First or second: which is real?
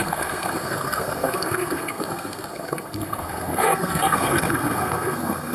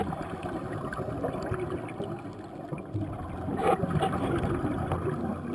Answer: second